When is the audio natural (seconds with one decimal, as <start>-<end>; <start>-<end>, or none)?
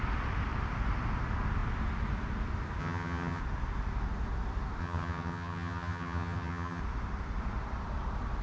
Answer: 0.0-2.8; 3.4-4.8; 6.8-8.4